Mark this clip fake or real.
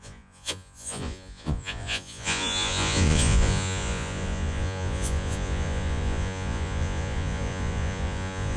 fake